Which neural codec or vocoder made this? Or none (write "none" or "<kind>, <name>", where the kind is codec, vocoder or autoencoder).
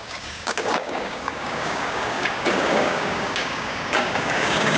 codec, DAC